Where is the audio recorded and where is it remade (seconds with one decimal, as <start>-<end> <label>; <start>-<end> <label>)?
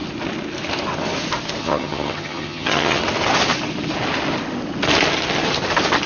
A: 0.0-1.6 recorded; 1.6-3.0 remade; 3.0-6.1 recorded